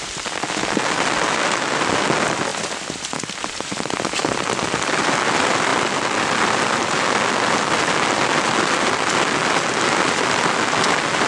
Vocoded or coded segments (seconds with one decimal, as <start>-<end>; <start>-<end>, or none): none